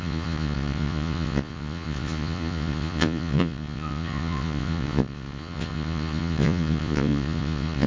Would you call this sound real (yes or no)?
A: no